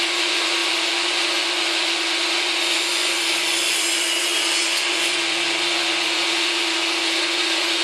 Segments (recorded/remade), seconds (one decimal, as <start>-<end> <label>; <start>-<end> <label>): 0.0-7.8 remade